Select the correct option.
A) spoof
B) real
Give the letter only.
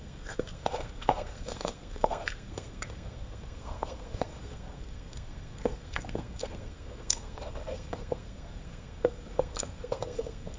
A